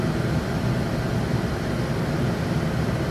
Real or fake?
real